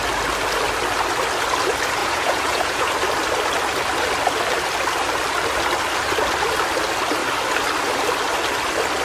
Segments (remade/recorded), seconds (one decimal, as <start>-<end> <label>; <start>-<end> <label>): 0.0-2.0 recorded; 2.0-2.9 remade; 2.9-9.0 recorded